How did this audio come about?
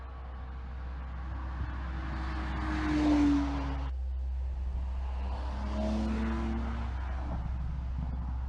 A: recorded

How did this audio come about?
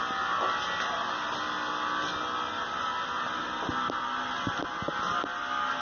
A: recorded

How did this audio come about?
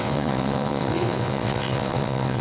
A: remade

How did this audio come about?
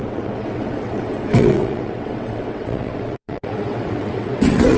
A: remade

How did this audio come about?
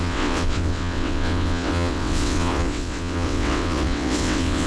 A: remade